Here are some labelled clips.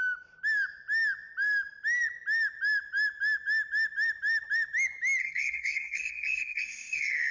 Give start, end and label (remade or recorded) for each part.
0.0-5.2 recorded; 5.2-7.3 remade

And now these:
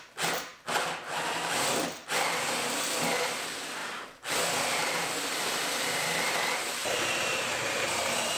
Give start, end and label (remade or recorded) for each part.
0.0-8.4 recorded

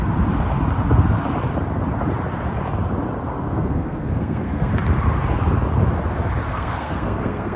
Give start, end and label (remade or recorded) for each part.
0.0-3.3 recorded; 3.3-4.7 remade; 4.7-6.5 recorded; 6.5-7.6 remade

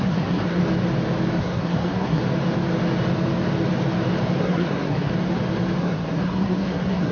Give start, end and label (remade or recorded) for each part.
0.0-0.6 remade; 0.6-1.4 recorded; 1.4-2.2 remade; 2.2-4.4 recorded; 4.4-5.1 remade; 5.1-5.8 recorded; 5.8-7.1 remade

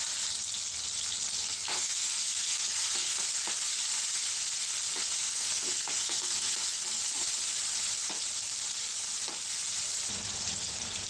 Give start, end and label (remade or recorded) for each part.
0.0-1.4 recorded; 1.4-3.2 remade; 3.2-5.2 recorded; 5.2-7.0 remade; 7.0-11.1 recorded

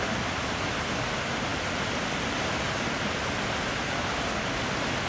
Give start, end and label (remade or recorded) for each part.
0.0-5.1 recorded

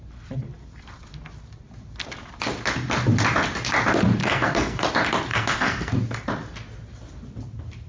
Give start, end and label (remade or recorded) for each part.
0.0-4.2 recorded; 4.2-4.8 remade; 4.8-5.3 recorded; 5.3-5.9 remade; 5.9-7.9 recorded

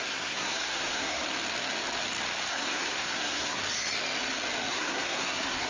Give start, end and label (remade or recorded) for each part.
0.0-1.2 remade; 1.2-2.5 recorded; 2.5-3.6 remade; 3.6-4.7 recorded; 4.7-5.7 remade